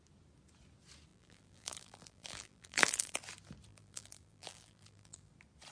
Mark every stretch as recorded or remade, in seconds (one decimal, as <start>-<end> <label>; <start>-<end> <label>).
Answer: 0.0-1.1 recorded; 1.1-3.2 remade; 3.2-3.7 recorded; 3.7-5.3 remade; 5.3-5.7 recorded